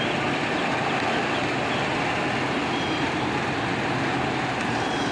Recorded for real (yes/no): yes